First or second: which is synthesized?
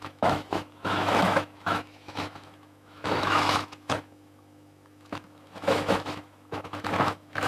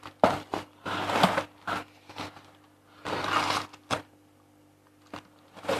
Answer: first